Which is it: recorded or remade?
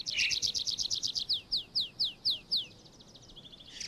recorded